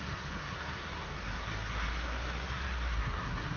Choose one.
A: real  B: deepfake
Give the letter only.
B